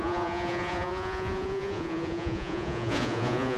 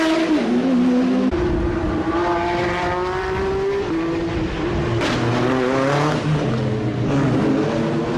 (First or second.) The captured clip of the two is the second